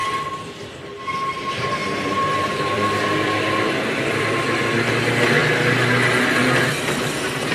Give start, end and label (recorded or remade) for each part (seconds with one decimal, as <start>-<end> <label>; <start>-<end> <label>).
0.0-0.6 remade; 0.6-1.8 recorded; 1.8-4.2 remade; 4.2-7.5 recorded